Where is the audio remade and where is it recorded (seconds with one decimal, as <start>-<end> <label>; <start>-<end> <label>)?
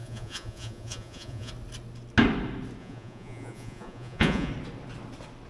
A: 0.0-1.5 remade; 1.5-2.8 recorded; 2.8-4.5 remade; 4.5-5.5 recorded